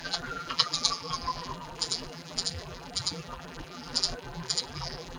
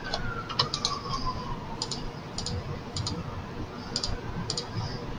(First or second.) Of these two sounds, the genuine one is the second